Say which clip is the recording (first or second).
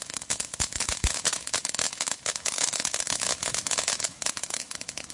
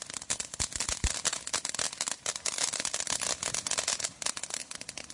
second